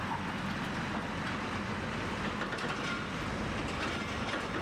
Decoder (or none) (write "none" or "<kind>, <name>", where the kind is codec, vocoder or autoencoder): vocoder, BigVGAN v2